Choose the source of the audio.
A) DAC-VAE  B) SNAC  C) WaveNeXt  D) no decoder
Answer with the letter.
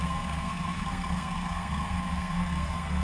B